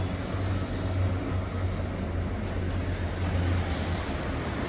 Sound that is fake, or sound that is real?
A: real